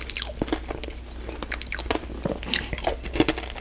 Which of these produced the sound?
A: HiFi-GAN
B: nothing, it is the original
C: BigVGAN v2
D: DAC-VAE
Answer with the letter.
B